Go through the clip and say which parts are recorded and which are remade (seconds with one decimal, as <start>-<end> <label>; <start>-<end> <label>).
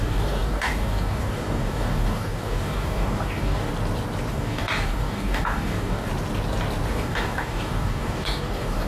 0.0-3.7 remade; 3.7-4.3 recorded; 4.3-6.1 remade; 6.1-6.9 recorded; 6.9-8.9 remade